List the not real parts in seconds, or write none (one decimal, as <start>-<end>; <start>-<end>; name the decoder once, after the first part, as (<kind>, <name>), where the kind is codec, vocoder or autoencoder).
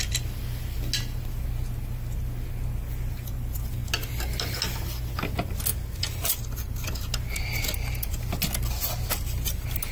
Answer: none